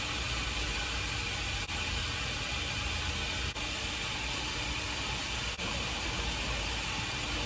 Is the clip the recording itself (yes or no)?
yes